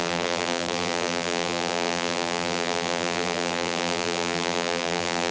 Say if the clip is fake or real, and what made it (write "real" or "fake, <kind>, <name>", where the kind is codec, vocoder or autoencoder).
fake, vocoder, BigVGAN v2